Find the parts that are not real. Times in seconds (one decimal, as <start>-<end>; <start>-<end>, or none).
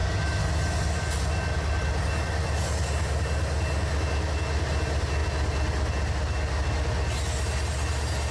none